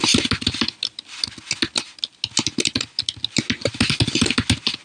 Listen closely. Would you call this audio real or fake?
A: real